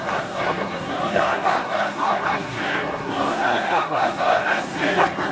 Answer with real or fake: fake